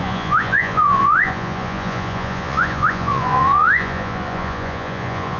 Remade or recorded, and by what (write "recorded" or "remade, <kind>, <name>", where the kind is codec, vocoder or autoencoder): remade, vocoder, Vocos